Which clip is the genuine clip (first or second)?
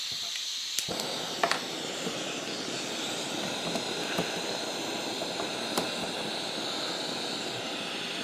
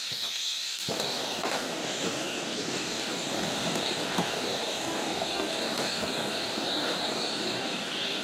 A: first